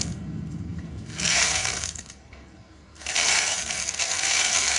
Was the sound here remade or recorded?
remade